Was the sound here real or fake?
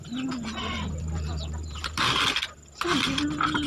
real